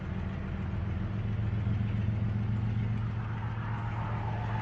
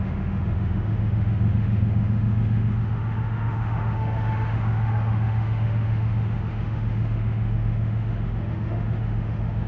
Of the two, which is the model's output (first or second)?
second